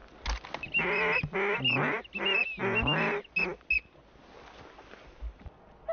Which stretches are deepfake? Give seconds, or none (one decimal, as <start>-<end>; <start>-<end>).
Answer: none